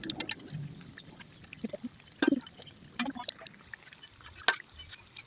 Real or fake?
real